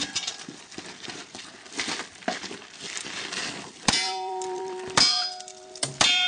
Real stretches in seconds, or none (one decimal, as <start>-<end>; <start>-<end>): none